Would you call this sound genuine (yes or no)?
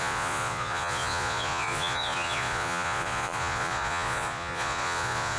no